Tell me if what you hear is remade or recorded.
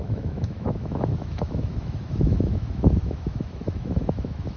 remade